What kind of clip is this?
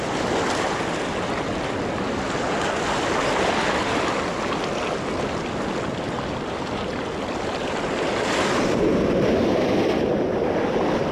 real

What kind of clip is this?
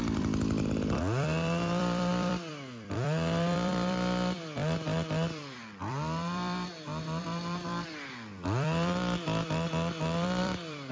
fake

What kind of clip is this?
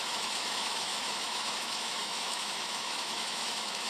fake